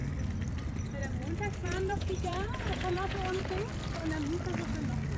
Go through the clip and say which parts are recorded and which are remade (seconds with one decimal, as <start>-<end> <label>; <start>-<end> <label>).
0.0-1.6 recorded; 1.6-3.4 remade; 3.4-5.2 recorded